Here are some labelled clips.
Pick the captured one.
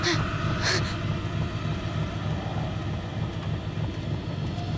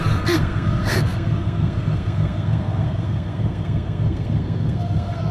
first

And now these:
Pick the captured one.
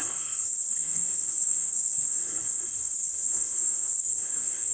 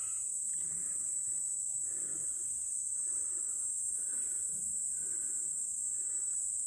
second